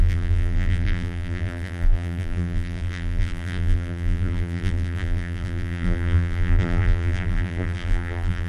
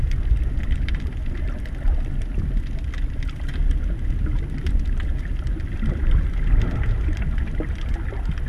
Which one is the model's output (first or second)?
first